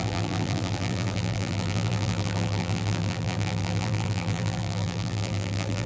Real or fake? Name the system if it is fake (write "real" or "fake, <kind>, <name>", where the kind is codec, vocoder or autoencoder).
fake, vocoder, BigVGAN v2